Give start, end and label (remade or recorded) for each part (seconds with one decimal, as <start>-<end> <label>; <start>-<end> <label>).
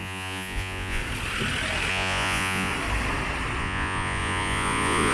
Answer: 0.0-1.0 remade; 1.0-1.9 recorded; 1.9-2.7 remade; 2.7-3.6 recorded; 3.6-5.1 remade